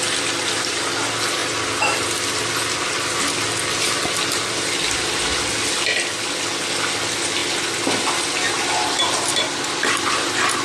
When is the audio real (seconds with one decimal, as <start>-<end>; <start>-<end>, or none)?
0.0-10.6